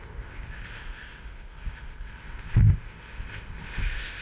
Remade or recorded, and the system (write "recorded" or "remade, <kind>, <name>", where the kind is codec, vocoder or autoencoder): remade, codec, ZipCodec